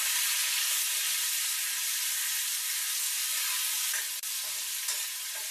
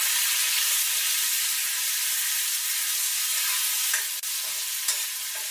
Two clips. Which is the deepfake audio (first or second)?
first